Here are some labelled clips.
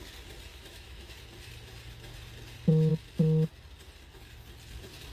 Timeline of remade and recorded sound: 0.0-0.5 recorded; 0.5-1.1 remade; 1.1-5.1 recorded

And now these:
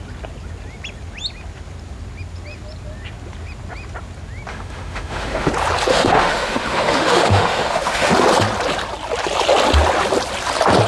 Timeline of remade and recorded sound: 0.0-4.5 recorded; 4.5-5.5 remade; 5.5-5.9 recorded; 5.9-8.1 remade; 8.1-10.9 recorded

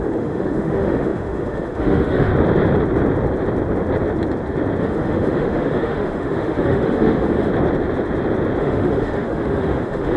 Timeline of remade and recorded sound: 0.0-2.3 remade; 2.3-4.8 recorded; 4.8-7.5 remade; 7.5-8.6 recorded; 8.6-10.2 remade